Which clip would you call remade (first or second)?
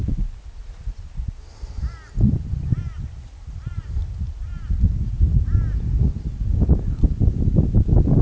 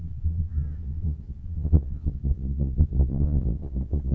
second